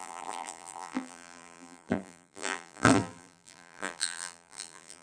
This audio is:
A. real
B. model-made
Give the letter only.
B